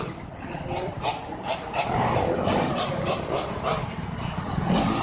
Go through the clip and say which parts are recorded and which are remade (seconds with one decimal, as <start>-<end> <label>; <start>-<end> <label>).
0.0-0.7 recorded; 0.7-3.7 remade; 3.7-5.0 recorded